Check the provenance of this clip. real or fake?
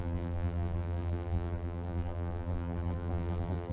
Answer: fake